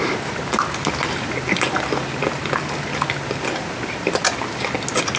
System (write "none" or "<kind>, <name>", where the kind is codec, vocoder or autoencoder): none